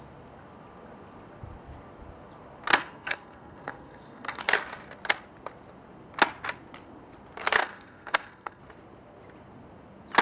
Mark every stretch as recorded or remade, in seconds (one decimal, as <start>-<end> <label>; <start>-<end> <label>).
0.0-2.7 recorded; 2.7-4.4 remade; 4.4-7.6 recorded; 7.6-8.6 remade; 8.6-10.2 recorded